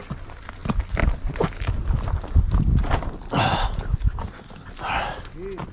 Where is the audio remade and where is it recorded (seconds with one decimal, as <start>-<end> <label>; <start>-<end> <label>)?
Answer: 0.0-5.7 recorded